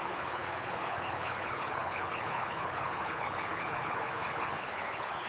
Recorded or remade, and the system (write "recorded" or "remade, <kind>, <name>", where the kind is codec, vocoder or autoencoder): remade, codec, HILCodec